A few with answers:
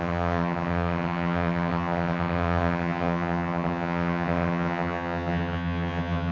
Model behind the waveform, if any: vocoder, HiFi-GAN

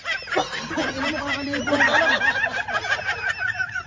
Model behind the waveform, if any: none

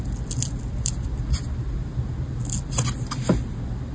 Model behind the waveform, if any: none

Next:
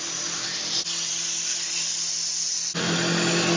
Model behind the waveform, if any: none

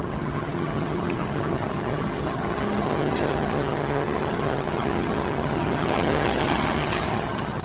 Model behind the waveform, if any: vocoder, HiFi-GAN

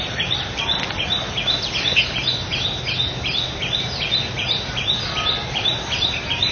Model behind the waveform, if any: none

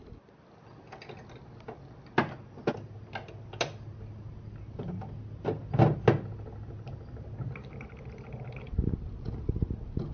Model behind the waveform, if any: none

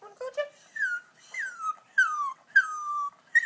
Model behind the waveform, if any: none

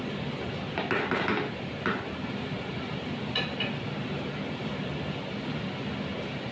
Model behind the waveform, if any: none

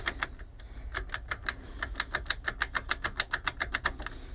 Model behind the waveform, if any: none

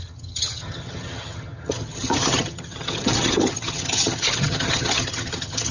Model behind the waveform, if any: vocoder, HiFi-GAN